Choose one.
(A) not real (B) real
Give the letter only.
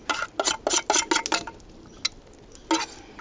B